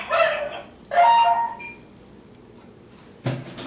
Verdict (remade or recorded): recorded